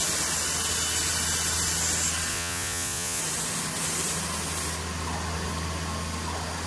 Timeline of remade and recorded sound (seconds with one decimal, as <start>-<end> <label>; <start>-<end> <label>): 0.0-2.3 recorded; 2.3-3.2 remade; 3.2-6.7 recorded